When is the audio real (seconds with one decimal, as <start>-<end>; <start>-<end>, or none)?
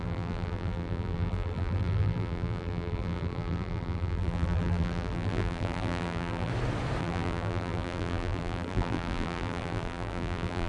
6.5-7.0